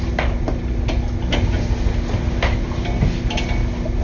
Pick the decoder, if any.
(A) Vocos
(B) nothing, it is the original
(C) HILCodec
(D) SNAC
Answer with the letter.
B